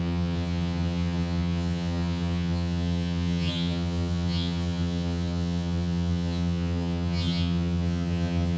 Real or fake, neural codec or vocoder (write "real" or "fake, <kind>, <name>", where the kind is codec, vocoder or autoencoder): fake, vocoder, HiFi-GAN